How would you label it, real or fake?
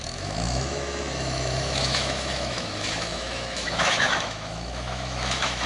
fake